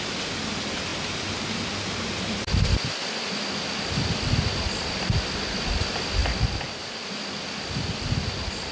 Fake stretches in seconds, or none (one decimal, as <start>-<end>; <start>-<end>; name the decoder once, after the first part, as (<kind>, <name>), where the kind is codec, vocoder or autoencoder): none